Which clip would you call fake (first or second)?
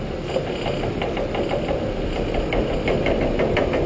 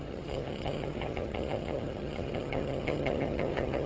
second